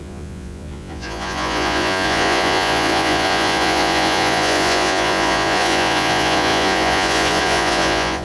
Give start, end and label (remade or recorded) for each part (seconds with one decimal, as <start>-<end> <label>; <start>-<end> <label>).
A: 0.0-8.2 remade